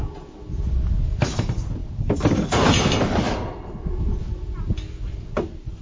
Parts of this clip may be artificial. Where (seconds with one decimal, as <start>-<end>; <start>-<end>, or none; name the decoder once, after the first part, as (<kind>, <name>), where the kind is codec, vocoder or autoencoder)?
none